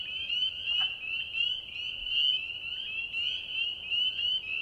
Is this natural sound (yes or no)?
yes